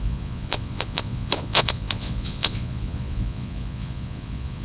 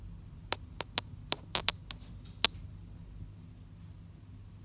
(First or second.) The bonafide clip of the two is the second